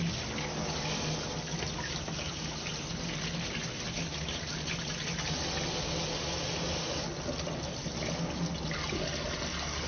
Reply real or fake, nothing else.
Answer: real